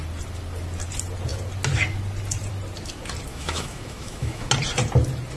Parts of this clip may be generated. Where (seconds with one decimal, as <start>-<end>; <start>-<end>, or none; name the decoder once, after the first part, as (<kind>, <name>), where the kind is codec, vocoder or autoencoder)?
3.3-4.5 (autoencoder, DAC-VAE)